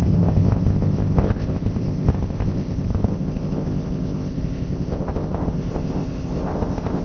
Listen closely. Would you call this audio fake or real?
fake